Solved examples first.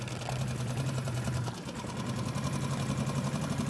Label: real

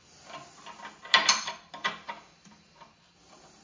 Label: real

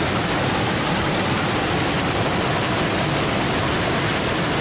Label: real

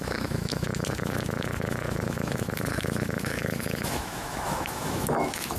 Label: fake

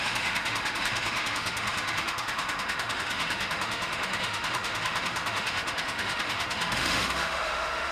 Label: fake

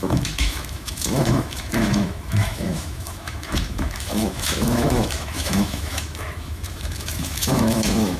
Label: fake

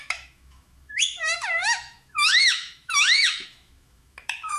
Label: fake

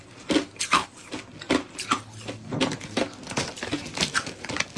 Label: real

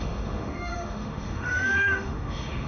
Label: fake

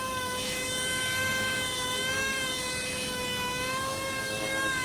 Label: fake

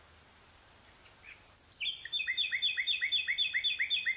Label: real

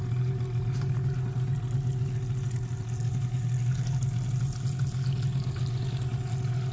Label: real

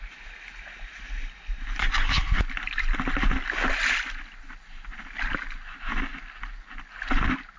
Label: real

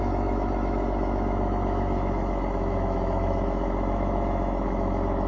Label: fake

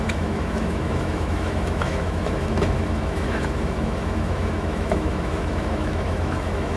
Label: fake